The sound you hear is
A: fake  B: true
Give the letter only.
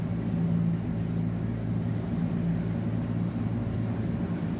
B